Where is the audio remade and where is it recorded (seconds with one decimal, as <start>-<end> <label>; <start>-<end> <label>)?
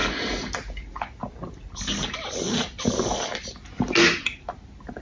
0.0-5.0 recorded